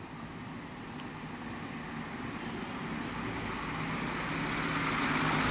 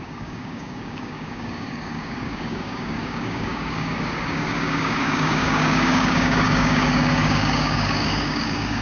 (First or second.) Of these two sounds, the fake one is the second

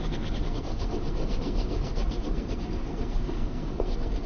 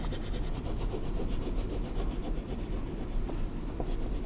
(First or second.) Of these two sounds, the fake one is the first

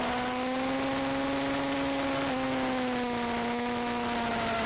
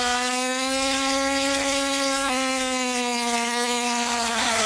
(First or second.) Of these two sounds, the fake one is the second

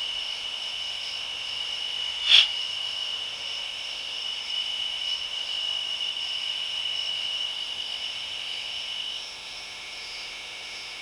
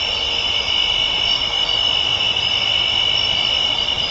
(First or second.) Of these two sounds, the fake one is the first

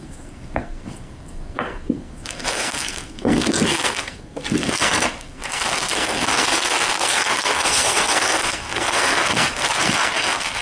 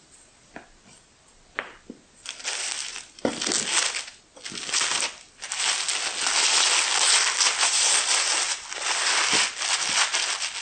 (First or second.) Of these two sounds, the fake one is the first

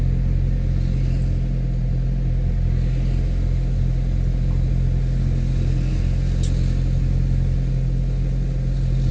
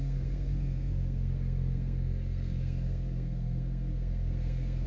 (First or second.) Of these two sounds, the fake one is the second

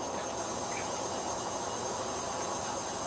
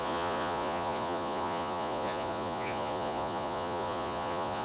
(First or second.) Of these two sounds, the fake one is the second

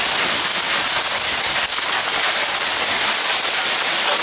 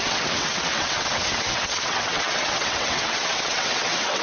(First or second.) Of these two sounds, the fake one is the second